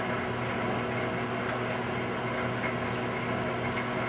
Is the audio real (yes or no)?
yes